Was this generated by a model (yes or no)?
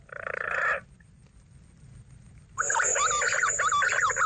no